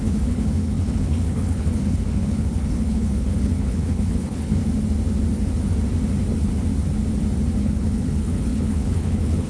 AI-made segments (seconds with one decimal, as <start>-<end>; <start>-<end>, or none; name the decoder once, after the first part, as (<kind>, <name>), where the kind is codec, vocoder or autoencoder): 0.0-4.6 (codec, HILCodec); 7.6-9.5